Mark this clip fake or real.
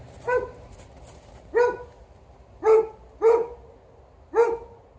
real